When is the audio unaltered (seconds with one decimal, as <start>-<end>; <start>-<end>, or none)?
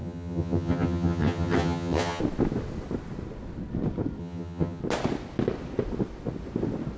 2.2-4.2; 4.8-7.0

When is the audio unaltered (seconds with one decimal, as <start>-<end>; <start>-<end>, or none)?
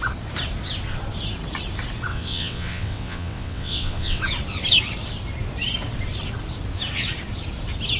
0.0-2.1; 4.2-8.0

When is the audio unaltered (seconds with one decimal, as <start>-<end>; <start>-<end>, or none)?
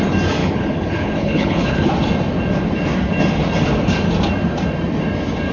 0.0-0.4; 1.9-5.5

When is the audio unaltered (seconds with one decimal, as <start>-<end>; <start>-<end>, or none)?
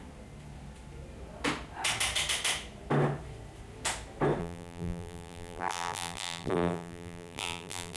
0.0-4.4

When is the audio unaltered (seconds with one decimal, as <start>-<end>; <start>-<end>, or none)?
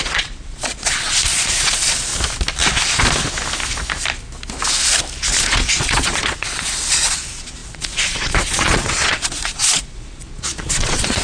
2.1-5.4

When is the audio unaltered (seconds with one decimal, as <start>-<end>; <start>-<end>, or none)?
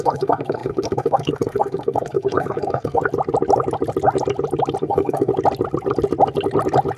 3.0-4.8; 5.3-7.0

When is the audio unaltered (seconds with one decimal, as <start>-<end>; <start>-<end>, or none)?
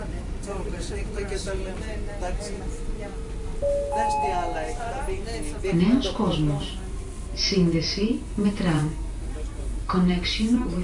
3.1-7.9